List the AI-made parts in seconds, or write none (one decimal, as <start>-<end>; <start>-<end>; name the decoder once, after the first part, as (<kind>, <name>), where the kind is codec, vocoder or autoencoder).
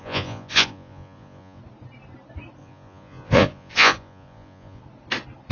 0.0-1.6 (vocoder, Vocos); 2.6-4.8